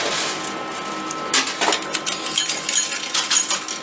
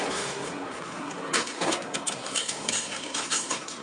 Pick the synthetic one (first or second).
second